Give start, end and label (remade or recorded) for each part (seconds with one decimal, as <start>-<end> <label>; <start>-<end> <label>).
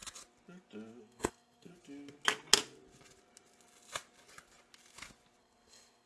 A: 0.0-1.0 recorded; 1.0-1.7 remade; 1.7-5.4 recorded; 5.4-6.1 remade